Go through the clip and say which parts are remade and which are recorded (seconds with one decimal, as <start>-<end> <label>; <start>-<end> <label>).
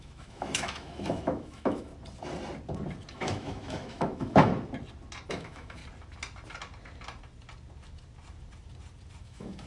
0.0-1.9 remade; 1.9-3.1 recorded; 3.1-4.5 remade; 4.5-5.3 recorded; 5.3-5.8 remade; 5.8-9.2 recorded; 9.2-9.7 remade